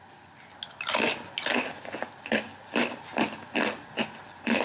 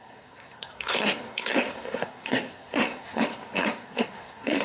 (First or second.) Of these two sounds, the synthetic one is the second